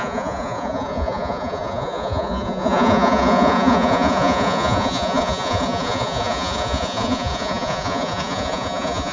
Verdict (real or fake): fake